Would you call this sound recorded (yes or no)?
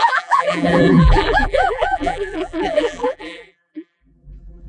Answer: no